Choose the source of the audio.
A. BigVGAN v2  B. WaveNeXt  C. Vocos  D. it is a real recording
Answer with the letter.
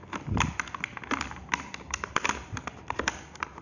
D